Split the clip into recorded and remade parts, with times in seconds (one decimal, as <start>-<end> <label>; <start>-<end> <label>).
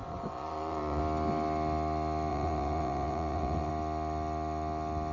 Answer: 0.0-1.0 remade; 1.0-2.3 recorded; 2.3-3.7 remade; 3.7-5.1 recorded